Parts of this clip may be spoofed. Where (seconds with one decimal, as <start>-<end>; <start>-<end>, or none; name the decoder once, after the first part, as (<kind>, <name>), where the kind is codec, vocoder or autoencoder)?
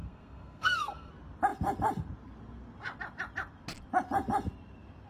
0.0-1.1 (codec, SNAC)